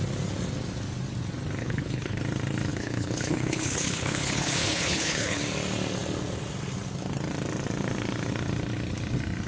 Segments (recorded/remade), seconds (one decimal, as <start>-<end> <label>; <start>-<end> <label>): 0.0-1.6 recorded; 1.6-2.2 remade; 2.2-2.7 recorded; 2.7-5.4 remade; 5.4-9.5 recorded